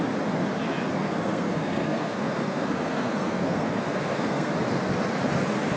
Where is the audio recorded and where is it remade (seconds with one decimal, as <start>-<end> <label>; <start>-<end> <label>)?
0.0-1.0 recorded; 1.0-4.5 remade; 4.5-5.8 recorded